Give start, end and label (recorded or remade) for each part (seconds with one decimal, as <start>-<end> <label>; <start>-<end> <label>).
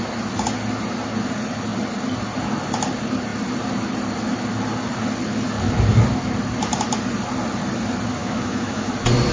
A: 0.0-8.2 recorded; 8.2-8.9 remade; 8.9-9.3 recorded